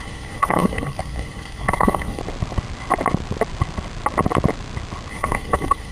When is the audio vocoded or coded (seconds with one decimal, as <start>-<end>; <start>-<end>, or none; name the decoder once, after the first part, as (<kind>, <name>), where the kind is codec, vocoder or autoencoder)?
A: 0.0-2.2 (codec, SNAC); 5.1-5.9